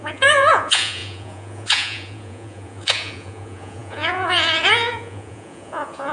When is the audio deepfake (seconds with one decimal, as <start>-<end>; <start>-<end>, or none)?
0.0-6.1